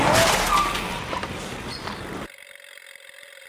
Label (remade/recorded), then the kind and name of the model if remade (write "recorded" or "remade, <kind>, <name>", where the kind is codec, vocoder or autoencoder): recorded